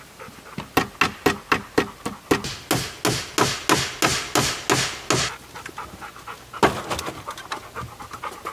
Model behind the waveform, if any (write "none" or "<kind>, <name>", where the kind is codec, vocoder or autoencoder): none